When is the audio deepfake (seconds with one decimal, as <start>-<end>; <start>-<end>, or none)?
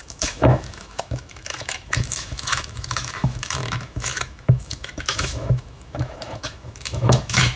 0.0-7.6